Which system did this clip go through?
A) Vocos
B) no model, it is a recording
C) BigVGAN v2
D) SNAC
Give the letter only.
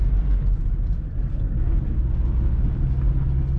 B